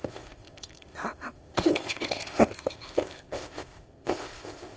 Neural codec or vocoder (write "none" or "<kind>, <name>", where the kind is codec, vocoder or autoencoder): codec, ZipCodec